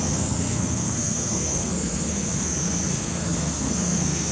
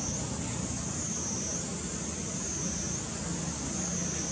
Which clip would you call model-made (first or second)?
first